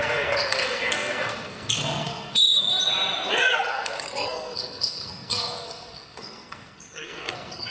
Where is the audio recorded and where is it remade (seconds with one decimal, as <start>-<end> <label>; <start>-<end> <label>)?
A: 0.0-2.7 remade; 2.7-3.3 recorded; 3.3-7.7 remade